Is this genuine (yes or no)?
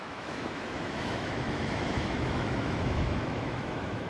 no